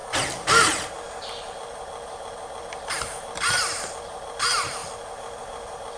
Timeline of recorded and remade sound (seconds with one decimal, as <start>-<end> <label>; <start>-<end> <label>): 0.0-6.0 recorded

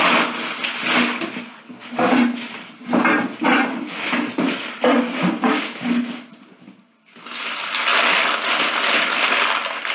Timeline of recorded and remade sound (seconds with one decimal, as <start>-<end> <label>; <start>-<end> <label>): 0.0-4.9 recorded; 4.9-5.8 remade; 5.8-9.9 recorded

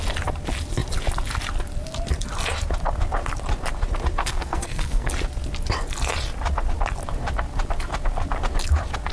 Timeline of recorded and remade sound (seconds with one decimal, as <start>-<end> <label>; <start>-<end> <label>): 0.0-4.2 recorded; 4.2-5.1 remade; 5.1-9.1 recorded

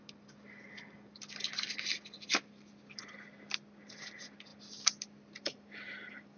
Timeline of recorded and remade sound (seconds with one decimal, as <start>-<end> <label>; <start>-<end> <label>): 0.0-6.4 recorded

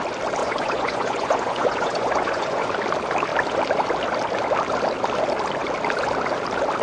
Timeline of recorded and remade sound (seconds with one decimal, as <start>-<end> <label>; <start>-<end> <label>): 0.0-0.4 recorded; 0.4-2.7 remade; 2.7-6.8 recorded